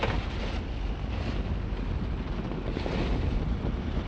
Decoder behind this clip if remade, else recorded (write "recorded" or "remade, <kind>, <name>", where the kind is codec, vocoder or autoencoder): recorded